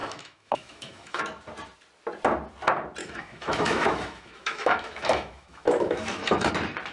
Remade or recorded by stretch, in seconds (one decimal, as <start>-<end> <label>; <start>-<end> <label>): 0.0-1.2 remade; 1.2-3.0 recorded; 3.0-6.5 remade; 6.5-6.9 recorded